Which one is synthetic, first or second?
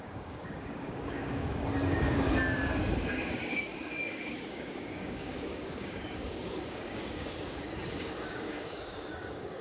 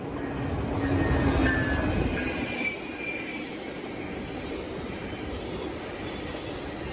first